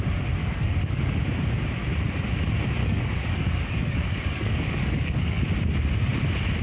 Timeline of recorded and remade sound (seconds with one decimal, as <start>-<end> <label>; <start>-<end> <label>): 0.0-0.4 recorded; 0.4-1.2 remade; 1.2-2.8 recorded; 2.8-5.4 remade; 5.4-6.6 recorded